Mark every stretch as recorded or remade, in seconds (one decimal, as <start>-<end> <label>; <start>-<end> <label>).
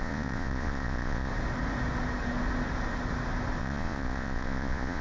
0.0-1.3 remade; 1.3-3.6 recorded; 3.6-5.0 remade